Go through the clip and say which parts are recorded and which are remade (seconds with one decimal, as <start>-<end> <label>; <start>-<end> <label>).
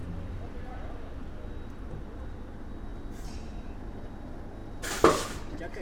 0.0-0.7 remade; 0.7-5.8 recorded